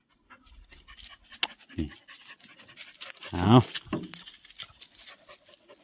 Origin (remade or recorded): recorded